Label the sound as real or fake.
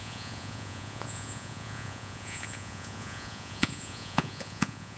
fake